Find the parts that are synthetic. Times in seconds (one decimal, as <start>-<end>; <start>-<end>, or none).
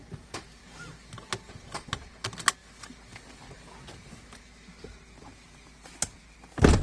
none